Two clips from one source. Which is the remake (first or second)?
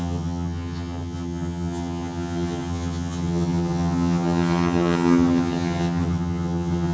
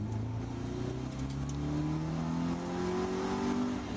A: first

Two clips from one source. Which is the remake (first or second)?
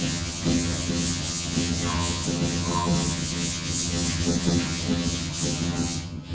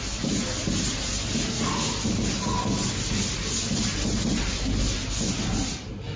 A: first